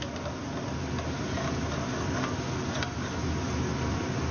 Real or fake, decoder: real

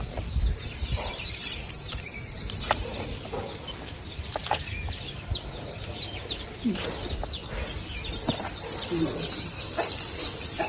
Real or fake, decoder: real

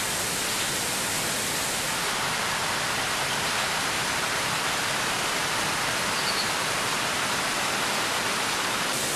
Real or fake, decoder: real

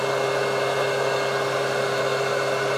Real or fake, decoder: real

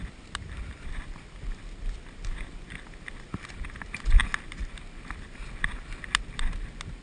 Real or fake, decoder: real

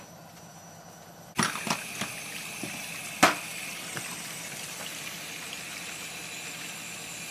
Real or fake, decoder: real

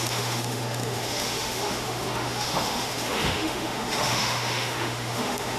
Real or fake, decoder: fake, autoencoder, DAC-VAE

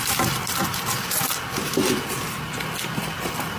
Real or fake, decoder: real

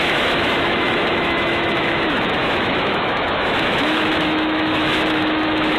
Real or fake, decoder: fake, autoencoder, DAC-VAE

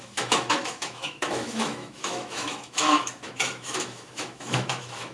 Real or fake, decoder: fake, autoencoder, DAC-VAE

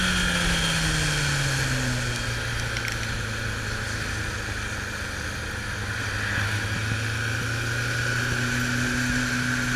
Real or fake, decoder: real